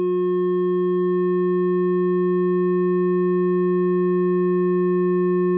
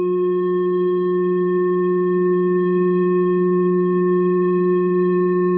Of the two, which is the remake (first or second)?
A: second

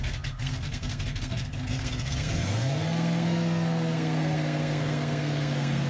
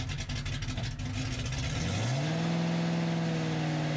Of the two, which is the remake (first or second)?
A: first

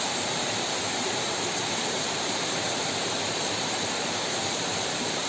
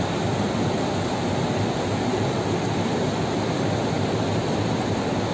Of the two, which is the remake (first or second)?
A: first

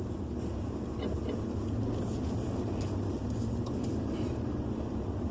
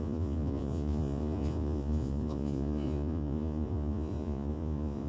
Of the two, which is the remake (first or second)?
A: second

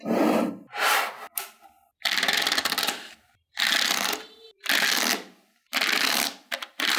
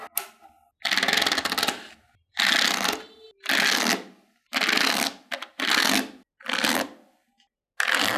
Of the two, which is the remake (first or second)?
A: first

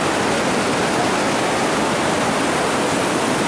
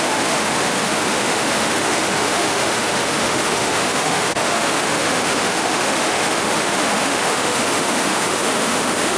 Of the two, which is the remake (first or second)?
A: second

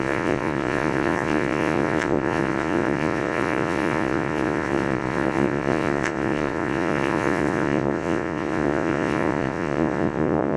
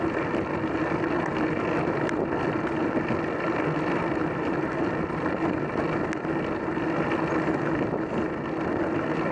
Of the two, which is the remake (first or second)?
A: first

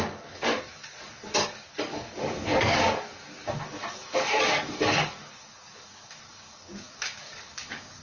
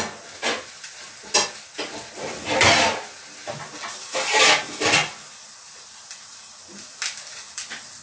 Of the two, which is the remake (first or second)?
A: first